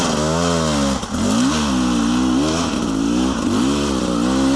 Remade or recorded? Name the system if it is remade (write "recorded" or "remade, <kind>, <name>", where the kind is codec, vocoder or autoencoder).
recorded